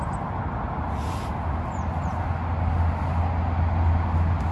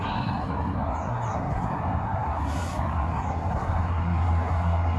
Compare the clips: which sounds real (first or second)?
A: first